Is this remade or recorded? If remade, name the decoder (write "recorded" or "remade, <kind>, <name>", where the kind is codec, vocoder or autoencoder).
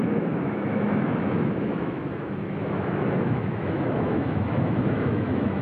remade, autoencoder, DAC-VAE